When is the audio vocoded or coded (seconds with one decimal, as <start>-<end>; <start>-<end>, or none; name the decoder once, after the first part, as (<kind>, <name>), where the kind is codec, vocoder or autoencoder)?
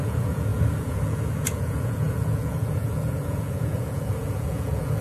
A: 0.0-5.0 (vocoder, Vocos)